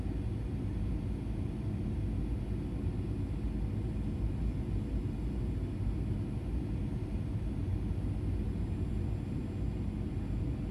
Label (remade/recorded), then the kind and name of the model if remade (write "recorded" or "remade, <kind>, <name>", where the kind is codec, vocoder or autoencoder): recorded